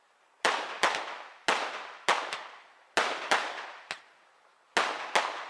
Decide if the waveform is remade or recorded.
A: recorded